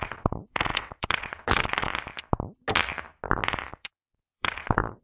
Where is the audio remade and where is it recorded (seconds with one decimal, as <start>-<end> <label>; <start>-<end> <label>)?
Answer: 0.0-1.9 remade; 1.9-3.7 recorded; 3.7-5.0 remade